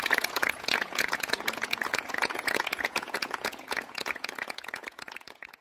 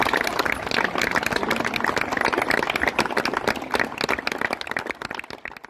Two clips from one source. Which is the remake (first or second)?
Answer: first